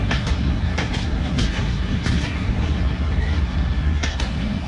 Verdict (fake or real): fake